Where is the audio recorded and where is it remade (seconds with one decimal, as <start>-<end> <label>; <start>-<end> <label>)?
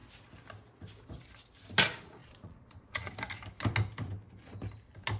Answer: 0.0-2.2 recorded; 2.2-3.1 remade; 3.1-5.2 recorded